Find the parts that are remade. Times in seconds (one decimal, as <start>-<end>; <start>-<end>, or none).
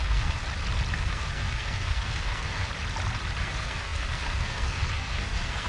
0.0-0.4; 0.9-2.7; 3.4-5.7